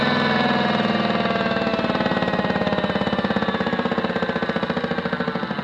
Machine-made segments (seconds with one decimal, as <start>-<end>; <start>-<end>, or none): none